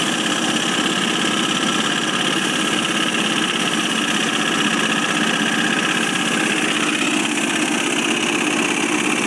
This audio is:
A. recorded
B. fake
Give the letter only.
A